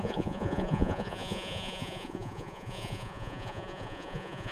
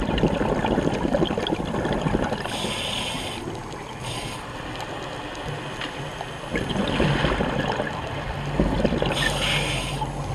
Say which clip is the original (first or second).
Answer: second